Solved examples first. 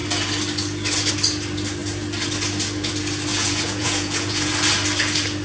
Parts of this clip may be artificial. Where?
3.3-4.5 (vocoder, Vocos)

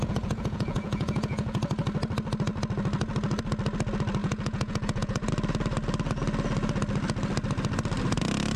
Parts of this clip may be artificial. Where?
0.0-1.6 (vocoder, Vocos); 4.2-5.3

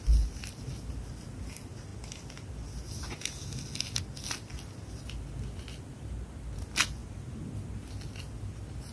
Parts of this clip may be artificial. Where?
none

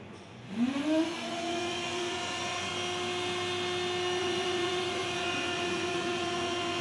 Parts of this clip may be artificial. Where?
0.0-2.7 (vocoder, Vocos); 4.2-6.8

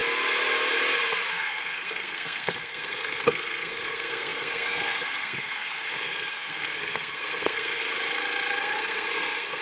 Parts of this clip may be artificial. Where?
1.3-7.8 (codec, SNAC); 8.6-9.6

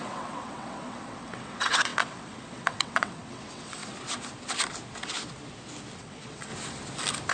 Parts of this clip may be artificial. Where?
0.0-3.8 (vocoder, WaveNeXt); 6.0-6.5